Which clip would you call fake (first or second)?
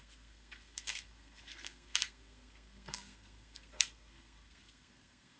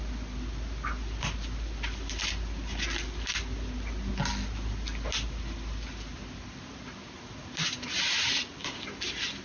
first